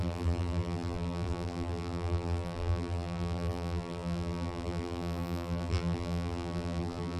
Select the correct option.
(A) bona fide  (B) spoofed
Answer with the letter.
B